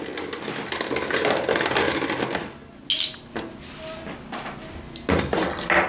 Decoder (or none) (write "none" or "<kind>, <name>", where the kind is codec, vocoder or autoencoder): none